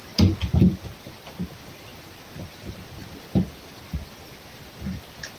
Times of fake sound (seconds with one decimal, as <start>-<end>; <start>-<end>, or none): none